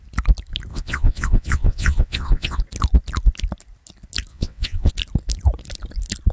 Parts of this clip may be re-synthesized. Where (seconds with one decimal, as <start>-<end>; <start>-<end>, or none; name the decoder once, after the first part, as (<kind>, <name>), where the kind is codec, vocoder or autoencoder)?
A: 0.7-2.6 (vocoder, WaveNeXt); 4.3-4.9